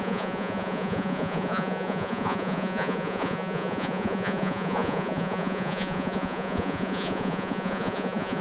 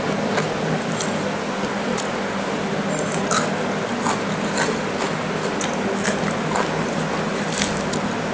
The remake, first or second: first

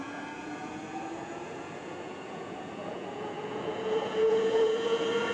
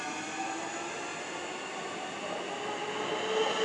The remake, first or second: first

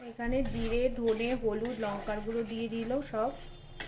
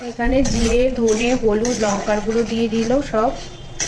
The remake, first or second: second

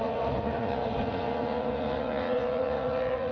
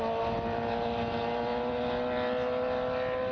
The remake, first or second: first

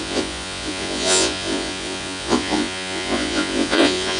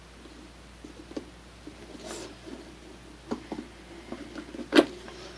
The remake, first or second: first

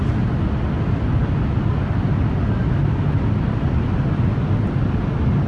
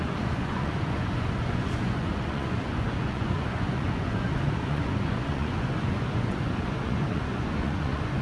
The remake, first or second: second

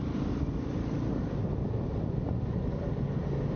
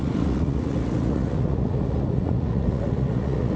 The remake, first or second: second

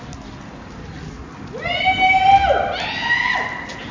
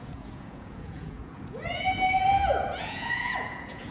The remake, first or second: second